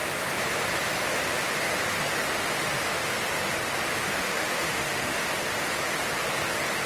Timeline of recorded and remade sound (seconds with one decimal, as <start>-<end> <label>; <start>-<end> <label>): 0.0-2.3 recorded; 2.3-3.1 remade; 3.1-4.2 recorded; 4.2-5.3 remade; 5.3-6.9 recorded